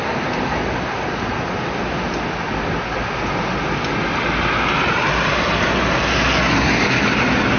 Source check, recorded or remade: recorded